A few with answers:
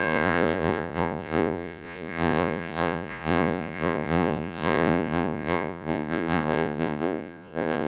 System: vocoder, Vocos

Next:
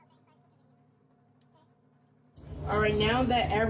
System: none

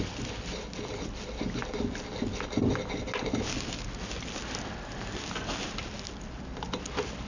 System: none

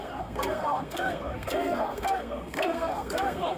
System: codec, SNAC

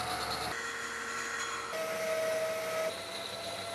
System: none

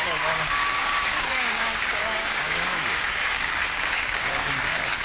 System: codec, DAC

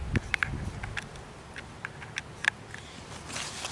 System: none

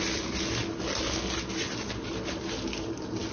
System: none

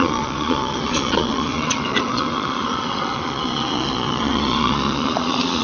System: vocoder, Vocos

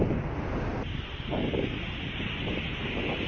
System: none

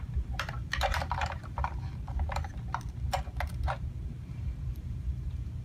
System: vocoder, BigVGAN v2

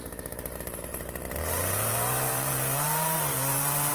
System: vocoder, BigVGAN v2